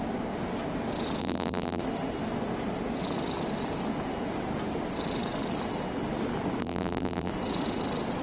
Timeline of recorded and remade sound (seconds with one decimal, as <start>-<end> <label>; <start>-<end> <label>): 0.0-1.2 recorded; 1.2-1.8 remade; 1.8-6.6 recorded; 6.6-7.3 remade; 7.3-8.2 recorded